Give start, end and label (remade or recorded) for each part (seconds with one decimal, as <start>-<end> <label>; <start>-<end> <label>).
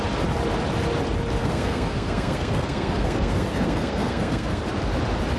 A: 0.0-1.4 recorded; 1.4-4.6 remade; 4.6-5.4 recorded